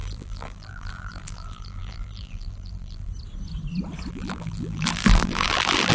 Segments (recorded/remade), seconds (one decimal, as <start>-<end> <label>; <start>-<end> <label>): 0.0-3.1 remade; 3.1-4.1 recorded; 4.1-5.9 remade